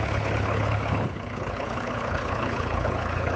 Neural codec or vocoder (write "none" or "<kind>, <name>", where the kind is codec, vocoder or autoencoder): codec, HILCodec